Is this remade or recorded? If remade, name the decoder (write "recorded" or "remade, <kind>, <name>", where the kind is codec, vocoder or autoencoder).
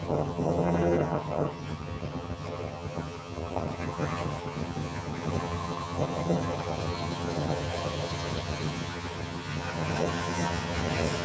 remade, vocoder, HiFi-GAN